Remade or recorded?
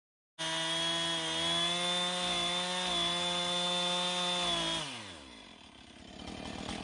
recorded